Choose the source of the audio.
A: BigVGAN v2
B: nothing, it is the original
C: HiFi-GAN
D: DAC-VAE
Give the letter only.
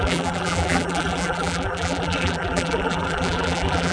A